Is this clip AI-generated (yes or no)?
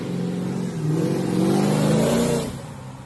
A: no